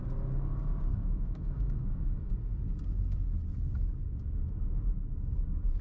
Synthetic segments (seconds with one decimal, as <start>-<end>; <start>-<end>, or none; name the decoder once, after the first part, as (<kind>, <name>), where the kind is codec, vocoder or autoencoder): 0.9-2.3 (autoencoder, DAC-VAE)